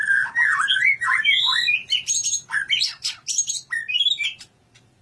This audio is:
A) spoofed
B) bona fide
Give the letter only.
B